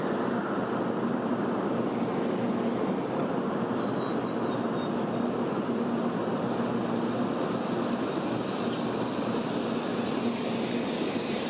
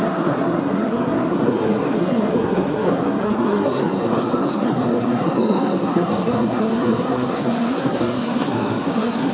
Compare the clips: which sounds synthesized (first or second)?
second